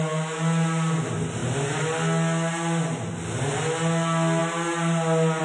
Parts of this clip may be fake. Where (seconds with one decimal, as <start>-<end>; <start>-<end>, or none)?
none